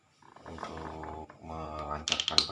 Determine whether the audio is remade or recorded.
recorded